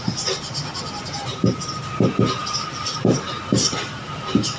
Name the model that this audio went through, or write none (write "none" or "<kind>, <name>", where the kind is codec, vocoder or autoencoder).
none